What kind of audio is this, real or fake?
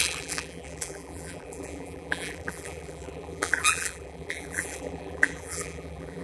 fake